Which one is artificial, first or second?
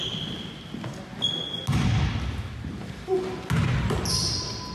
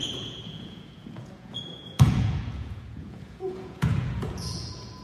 second